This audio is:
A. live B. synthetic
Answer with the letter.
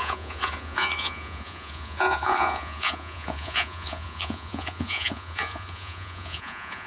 B